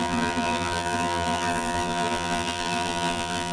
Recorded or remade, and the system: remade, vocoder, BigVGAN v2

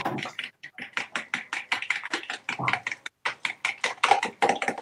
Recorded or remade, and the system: recorded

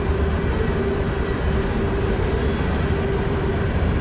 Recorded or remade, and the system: recorded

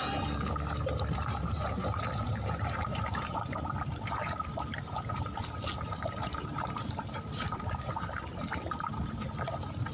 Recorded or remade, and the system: remade, vocoder, BigVGAN v2